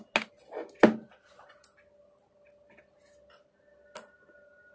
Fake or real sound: real